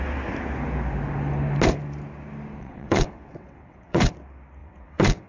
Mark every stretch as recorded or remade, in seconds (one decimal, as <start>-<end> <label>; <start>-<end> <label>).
0.0-2.6 recorded; 2.6-4.1 remade; 4.1-4.6 recorded; 4.6-5.3 remade